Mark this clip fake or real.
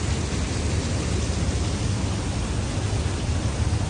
real